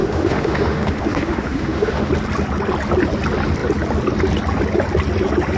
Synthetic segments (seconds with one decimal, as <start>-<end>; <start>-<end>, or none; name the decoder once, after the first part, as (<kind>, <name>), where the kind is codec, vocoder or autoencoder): 0.0-2.1 (autoencoder, DAC-VAE)